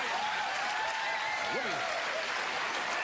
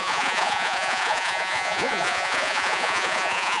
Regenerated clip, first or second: second